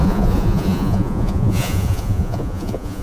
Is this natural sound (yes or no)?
no